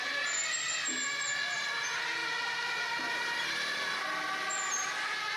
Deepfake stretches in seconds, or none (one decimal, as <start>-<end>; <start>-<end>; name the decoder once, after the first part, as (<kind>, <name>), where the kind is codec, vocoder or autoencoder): none